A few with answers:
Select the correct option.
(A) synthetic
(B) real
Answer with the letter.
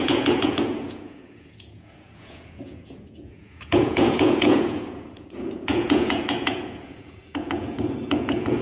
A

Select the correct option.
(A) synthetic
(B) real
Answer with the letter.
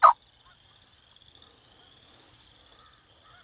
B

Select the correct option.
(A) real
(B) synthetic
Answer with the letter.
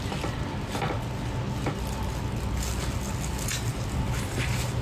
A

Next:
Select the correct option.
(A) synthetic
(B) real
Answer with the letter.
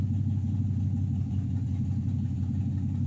B